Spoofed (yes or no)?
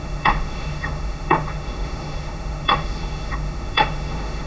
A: yes